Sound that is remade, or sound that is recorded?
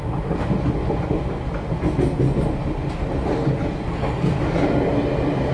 recorded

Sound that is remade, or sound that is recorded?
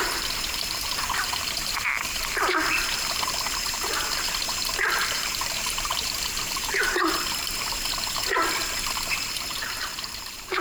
remade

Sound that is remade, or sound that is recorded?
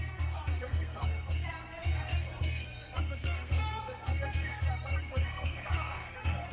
remade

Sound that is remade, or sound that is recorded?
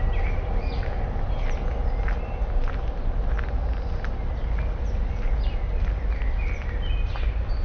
recorded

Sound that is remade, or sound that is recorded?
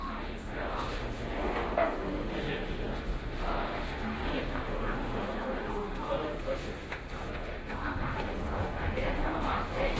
remade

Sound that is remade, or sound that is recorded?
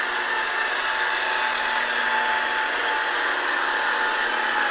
recorded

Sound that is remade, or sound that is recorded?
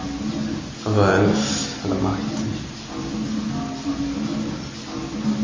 recorded